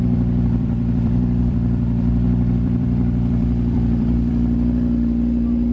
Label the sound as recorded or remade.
remade